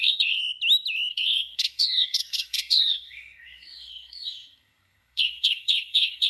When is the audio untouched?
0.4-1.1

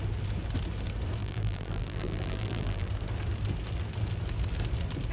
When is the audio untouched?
0.0-1.2; 2.9-5.1

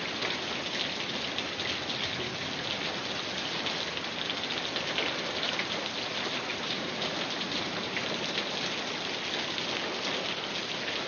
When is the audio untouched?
0.0-6.5; 8.2-11.1

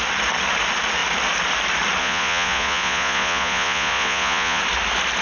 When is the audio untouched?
0.0-2.0; 4.6-5.2

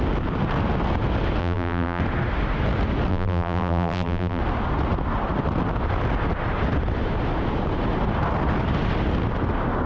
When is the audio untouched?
0.0-1.4; 2.0-3.1; 4.4-9.9